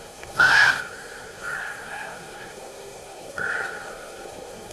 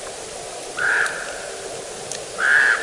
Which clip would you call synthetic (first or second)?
first